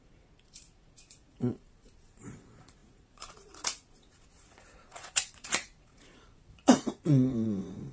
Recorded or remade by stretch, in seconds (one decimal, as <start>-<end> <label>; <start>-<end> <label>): 0.0-7.9 remade